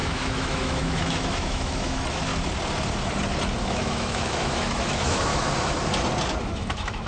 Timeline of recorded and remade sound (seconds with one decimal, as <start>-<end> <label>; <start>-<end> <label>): 0.0-2.3 remade; 2.3-3.6 recorded; 3.6-5.3 remade; 5.3-6.4 recorded; 6.4-7.1 remade